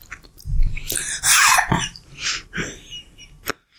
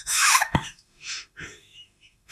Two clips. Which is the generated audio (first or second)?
second